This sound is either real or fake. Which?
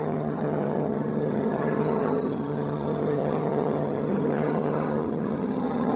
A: fake